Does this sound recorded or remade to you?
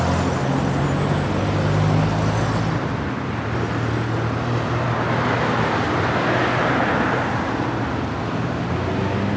recorded